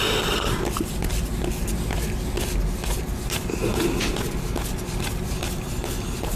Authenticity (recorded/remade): recorded